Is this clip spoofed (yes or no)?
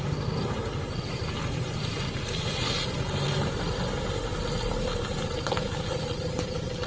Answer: no